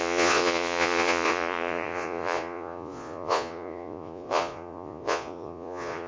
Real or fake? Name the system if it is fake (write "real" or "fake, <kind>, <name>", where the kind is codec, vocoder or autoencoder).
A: fake, vocoder, Vocos